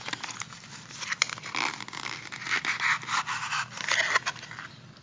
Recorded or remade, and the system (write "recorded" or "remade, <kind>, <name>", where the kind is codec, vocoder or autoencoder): recorded